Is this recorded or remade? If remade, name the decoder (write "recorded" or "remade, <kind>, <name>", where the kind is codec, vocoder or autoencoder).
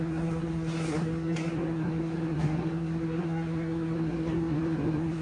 remade, codec, SNAC